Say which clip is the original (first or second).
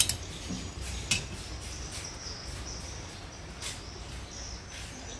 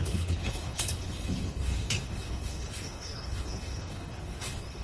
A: first